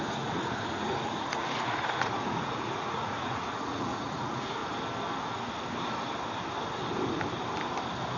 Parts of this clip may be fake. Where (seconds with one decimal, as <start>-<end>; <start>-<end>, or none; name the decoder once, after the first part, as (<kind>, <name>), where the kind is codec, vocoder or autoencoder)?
0.0-4.6 (vocoder, Vocos)